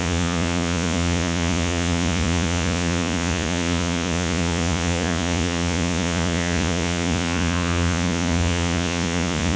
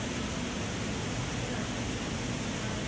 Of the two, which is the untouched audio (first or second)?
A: second